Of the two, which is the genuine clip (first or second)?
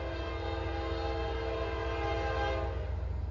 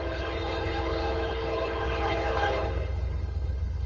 first